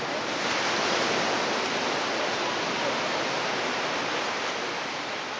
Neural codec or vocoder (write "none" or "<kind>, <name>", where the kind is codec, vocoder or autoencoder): none